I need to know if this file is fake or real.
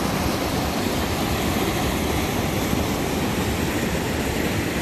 real